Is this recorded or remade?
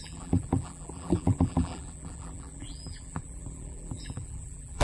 remade